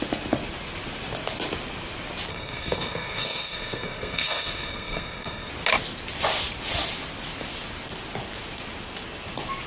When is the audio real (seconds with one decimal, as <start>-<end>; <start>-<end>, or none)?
0.0-2.3; 5.5-9.7